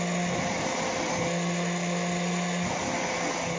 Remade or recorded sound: recorded